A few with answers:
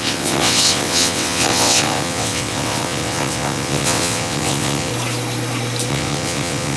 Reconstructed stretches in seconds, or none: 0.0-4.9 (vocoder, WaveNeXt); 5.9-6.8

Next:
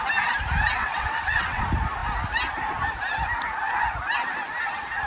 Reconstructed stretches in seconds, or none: 0.8-1.6 (vocoder, WaveNeXt)

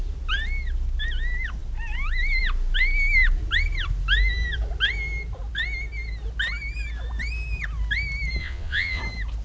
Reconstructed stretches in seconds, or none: 8.4-9.0 (vocoder, WaveNeXt)

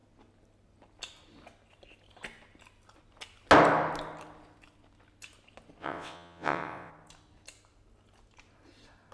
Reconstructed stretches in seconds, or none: 5.8-6.9 (vocoder, WaveNeXt)